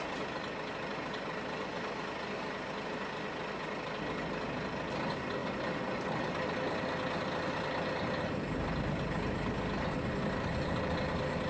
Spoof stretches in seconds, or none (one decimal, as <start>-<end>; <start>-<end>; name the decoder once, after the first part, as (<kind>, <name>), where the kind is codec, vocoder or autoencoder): none